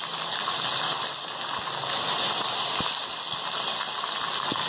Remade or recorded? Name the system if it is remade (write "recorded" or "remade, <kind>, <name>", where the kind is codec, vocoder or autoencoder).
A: recorded